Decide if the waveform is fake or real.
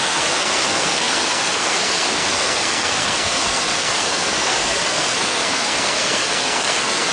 fake